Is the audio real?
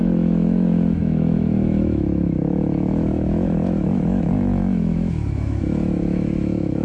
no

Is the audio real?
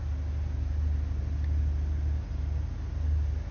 yes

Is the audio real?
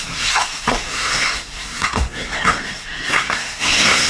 no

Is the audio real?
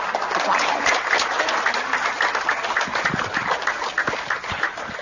yes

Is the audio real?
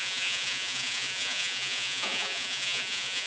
no